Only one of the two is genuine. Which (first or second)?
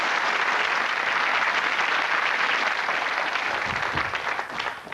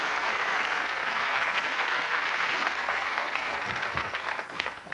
first